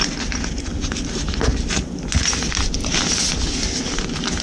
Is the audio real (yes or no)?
yes